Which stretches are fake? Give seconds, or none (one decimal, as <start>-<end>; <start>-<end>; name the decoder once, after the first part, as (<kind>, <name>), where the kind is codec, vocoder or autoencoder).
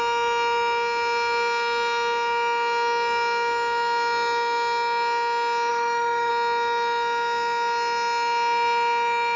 5.7-6.3 (autoencoder, DAC-VAE)